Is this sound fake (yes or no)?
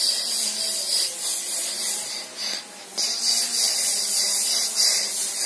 no